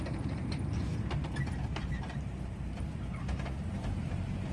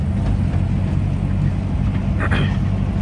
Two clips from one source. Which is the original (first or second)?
second